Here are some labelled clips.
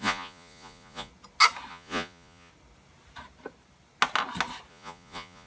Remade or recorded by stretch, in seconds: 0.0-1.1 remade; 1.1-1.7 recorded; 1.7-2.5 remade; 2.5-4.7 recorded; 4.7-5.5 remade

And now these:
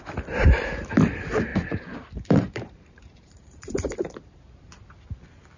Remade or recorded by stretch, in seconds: 0.0-1.5 recorded; 1.5-4.6 remade; 4.6-5.6 recorded

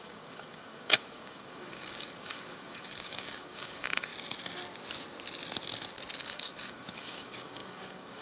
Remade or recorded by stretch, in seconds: 0.0-4.1 remade; 4.1-6.2 recorded; 6.2-8.2 remade